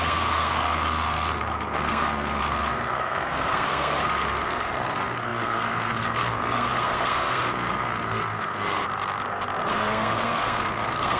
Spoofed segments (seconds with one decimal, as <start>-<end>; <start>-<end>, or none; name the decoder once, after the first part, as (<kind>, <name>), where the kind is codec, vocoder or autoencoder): 0.0-8.8 (codec, SNAC); 9.7-11.2